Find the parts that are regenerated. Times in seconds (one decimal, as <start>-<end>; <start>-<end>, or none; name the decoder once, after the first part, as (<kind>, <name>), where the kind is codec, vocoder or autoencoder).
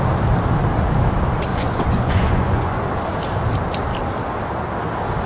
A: 1.5-2.8 (vocoder, Vocos)